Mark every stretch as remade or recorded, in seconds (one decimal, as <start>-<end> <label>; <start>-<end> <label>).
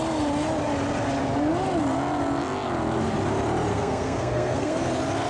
0.0-3.7 recorded; 3.7-4.8 remade; 4.8-5.3 recorded